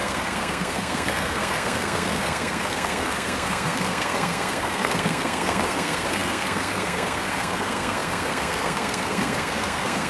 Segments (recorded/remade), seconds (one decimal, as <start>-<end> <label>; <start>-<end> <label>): 0.0-10.1 remade